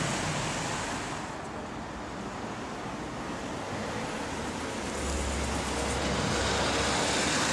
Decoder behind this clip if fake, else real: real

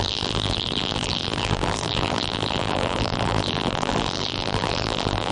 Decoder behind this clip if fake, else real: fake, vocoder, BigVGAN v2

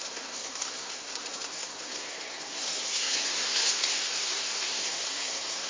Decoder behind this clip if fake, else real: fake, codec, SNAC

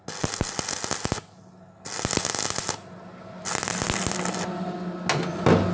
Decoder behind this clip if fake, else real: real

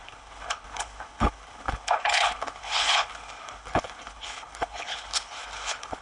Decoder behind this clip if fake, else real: fake, codec, HILCodec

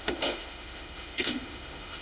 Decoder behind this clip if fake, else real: fake, autoencoder, DAC-VAE